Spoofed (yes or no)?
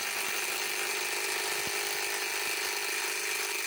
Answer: no